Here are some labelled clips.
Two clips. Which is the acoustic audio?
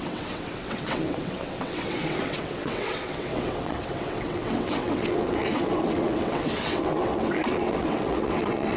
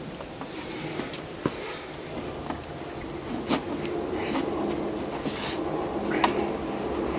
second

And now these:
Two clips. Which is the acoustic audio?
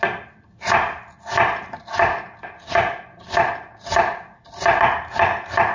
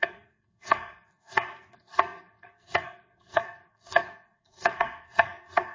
first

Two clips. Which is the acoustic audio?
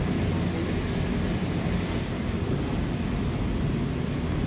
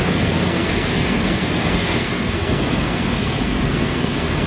first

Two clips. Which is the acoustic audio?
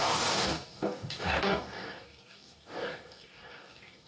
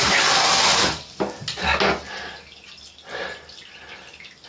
second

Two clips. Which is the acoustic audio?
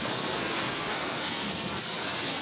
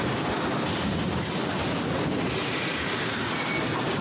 second